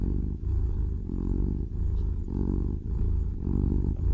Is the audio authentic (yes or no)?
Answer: no